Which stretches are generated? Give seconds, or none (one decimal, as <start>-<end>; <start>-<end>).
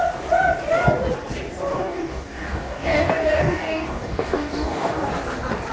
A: 1.7-5.1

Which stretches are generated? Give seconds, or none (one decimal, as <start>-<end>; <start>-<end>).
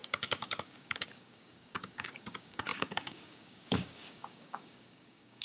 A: 0.0-5.4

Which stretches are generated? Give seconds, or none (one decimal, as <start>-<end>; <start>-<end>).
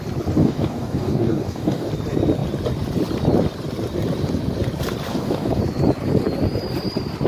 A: 0.4-1.9; 5.1-5.6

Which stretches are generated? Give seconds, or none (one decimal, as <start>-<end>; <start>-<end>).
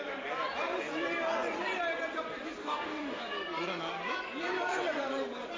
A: 2.6-3.2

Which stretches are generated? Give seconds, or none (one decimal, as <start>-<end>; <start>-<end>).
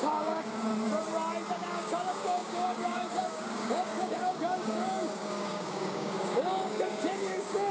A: 0.0-0.7; 1.5-7.7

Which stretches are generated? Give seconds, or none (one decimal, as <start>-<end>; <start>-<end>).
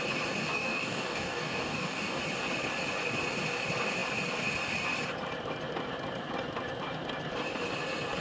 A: 0.5-2.2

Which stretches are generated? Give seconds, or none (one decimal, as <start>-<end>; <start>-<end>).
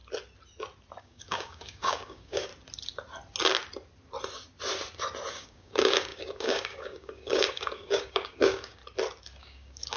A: 1.0-2.5; 5.3-8.8; 9.4-10.0